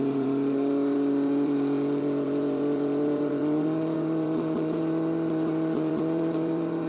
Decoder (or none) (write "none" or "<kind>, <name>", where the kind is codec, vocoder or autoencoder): vocoder, Vocos